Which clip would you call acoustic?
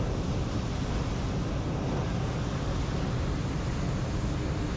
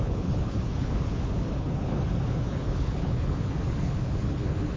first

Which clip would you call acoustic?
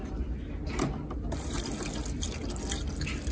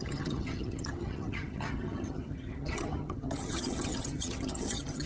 first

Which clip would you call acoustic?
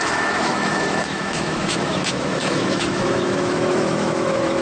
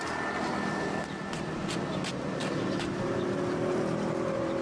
second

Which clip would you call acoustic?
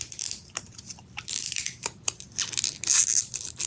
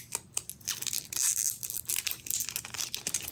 second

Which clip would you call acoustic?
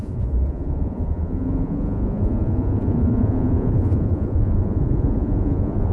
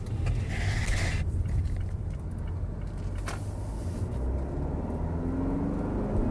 second